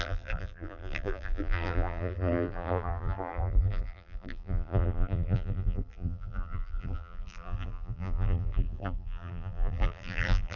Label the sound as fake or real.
fake